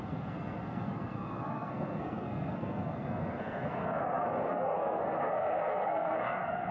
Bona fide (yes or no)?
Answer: no